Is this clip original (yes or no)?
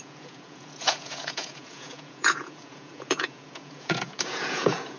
no